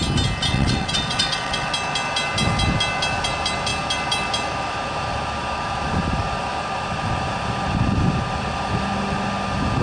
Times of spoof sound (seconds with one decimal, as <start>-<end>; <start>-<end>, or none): 0.5-1.7